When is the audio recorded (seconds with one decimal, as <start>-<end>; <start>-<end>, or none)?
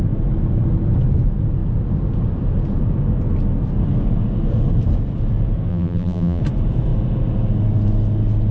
0.0-5.7; 6.4-8.5